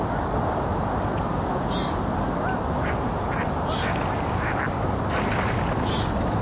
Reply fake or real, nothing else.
real